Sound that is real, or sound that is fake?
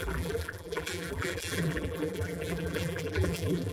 fake